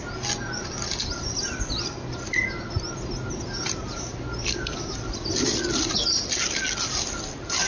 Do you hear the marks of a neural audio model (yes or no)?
no